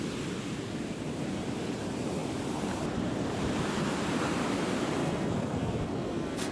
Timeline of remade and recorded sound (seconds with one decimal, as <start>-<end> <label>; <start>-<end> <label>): 0.0-5.0 recorded; 5.0-6.5 remade